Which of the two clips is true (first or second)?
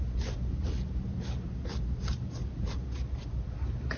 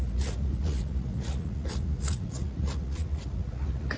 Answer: first